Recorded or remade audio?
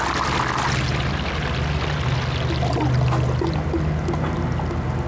recorded